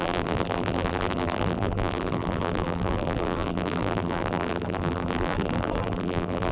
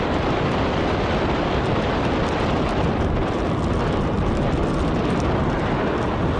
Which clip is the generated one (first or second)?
first